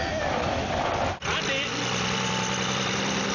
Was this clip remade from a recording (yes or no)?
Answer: yes